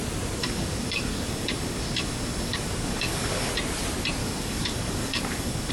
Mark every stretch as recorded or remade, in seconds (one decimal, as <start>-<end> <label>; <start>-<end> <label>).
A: 0.0-0.4 recorded; 0.4-3.5 remade; 3.5-4.2 recorded; 4.2-5.7 remade